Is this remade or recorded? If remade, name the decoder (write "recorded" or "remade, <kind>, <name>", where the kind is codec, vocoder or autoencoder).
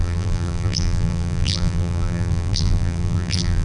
remade, vocoder, BigVGAN v2